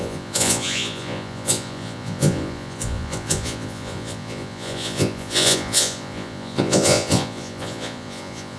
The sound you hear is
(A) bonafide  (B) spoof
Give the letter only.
B